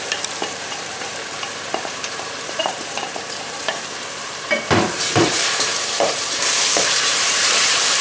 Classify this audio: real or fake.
fake